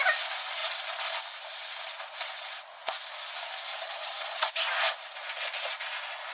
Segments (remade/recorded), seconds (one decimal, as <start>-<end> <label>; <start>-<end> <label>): 0.0-3.7 recorded; 3.7-4.5 remade; 4.5-6.3 recorded